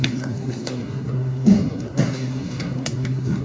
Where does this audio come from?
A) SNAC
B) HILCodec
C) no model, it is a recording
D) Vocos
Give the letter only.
A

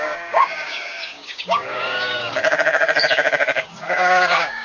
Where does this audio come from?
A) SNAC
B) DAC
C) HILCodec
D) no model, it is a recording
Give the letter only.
B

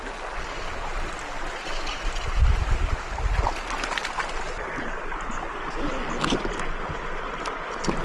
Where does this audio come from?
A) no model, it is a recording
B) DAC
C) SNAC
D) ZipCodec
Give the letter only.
A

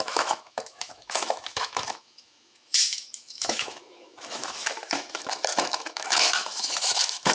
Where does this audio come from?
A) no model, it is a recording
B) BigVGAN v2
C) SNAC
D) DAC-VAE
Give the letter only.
D